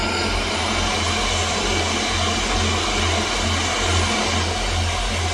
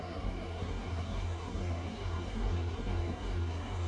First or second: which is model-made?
second